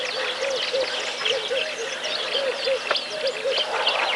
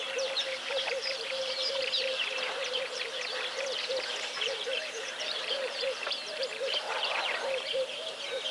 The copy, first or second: second